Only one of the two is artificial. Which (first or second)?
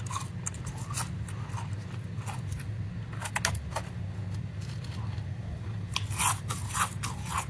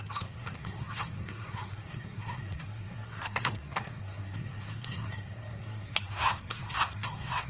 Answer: second